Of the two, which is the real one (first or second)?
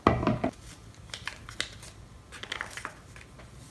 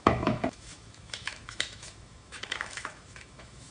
first